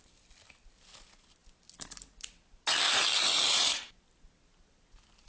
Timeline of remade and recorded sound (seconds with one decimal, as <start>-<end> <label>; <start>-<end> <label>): 0.0-5.3 recorded